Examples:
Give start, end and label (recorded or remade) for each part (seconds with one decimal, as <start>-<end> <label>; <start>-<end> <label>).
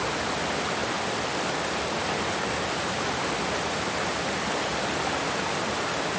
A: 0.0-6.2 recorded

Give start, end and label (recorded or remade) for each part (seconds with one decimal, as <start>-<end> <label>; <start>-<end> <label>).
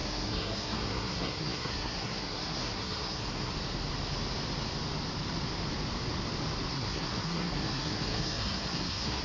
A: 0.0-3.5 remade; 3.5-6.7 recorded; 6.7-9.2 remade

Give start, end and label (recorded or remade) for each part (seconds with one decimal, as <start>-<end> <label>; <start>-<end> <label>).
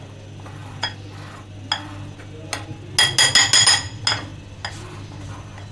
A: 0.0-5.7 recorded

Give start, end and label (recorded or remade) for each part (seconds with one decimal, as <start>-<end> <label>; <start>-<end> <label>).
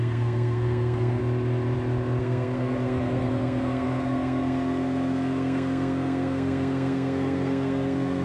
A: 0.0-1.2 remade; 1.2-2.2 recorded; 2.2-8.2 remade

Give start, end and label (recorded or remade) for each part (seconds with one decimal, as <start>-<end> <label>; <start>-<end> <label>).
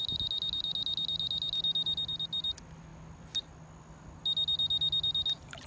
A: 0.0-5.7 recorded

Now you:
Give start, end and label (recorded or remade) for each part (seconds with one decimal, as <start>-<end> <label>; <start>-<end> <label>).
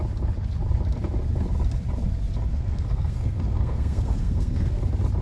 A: 0.0-2.5 recorded; 2.5-4.8 remade; 4.8-5.2 recorded